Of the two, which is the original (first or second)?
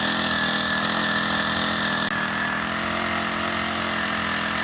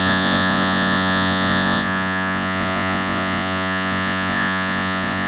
first